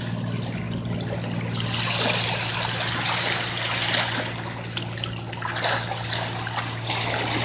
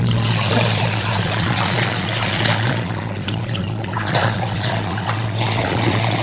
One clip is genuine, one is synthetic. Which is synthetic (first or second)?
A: second